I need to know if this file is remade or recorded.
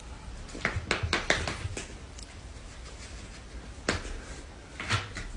recorded